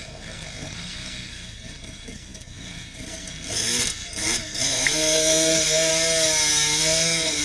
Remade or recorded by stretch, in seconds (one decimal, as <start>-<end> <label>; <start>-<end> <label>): 0.0-5.9 remade; 5.9-6.8 recorded; 6.8-7.4 remade